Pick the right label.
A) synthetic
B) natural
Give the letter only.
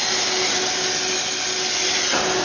B